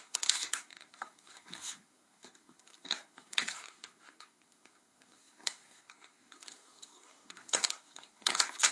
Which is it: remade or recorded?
remade